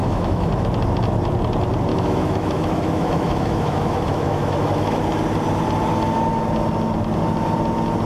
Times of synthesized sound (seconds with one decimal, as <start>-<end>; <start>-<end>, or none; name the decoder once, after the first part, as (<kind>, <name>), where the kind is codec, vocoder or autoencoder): 0.0-0.5 (autoencoder, DAC-VAE); 1.9-5.0